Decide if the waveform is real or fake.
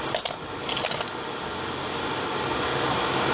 real